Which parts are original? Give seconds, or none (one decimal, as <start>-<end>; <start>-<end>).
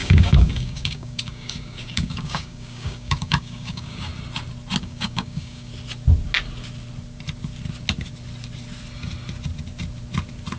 4.1-4.8; 5.7-10.6